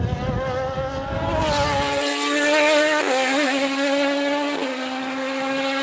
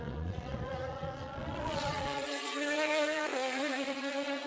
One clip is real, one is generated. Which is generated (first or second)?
second